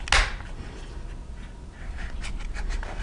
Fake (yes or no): no